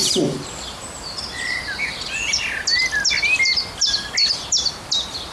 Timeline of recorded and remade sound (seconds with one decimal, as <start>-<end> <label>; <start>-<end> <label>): 0.0-2.4 remade; 2.4-5.3 recorded